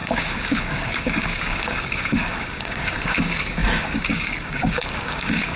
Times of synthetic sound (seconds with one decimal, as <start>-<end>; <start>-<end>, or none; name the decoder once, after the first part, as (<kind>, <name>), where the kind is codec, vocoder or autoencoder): 0.0-5.6 (codec, DAC)